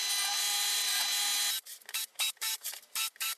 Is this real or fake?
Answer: real